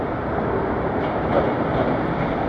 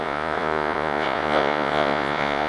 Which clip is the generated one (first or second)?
second